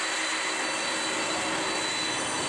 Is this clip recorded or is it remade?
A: recorded